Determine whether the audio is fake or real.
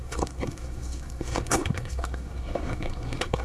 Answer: fake